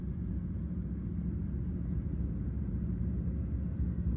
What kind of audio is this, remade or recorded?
recorded